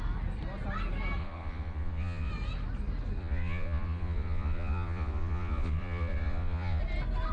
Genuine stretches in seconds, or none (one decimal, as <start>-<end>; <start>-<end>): 0.0-1.2; 2.3-3.2; 6.8-7.3